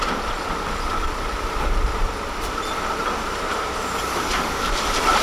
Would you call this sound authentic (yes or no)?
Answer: no